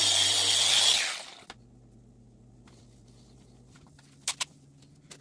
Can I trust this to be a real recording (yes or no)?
yes